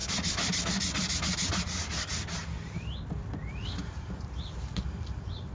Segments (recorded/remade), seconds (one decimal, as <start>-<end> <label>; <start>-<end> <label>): 0.0-5.5 recorded